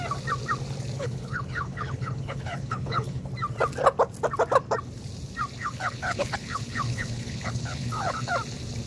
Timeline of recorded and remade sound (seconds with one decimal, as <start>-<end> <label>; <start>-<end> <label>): 0.0-1.0 recorded; 1.0-3.3 remade; 3.3-5.6 recorded; 5.6-8.3 remade; 8.3-8.9 recorded